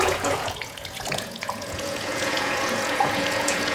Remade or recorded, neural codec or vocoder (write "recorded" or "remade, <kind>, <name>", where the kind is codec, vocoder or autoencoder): remade, vocoder, Vocos